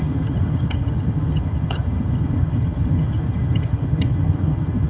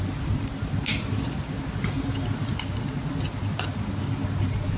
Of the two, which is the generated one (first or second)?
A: first